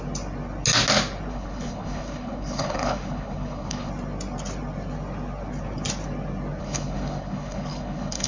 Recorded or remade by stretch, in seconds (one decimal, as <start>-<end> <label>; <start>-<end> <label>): 0.0-1.3 recorded; 1.3-3.9 remade; 3.9-6.6 recorded; 6.6-8.3 remade